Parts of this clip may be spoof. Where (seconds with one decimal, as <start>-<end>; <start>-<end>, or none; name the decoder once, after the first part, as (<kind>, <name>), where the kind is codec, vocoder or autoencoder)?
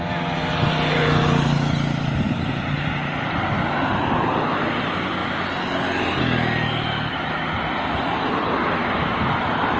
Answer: none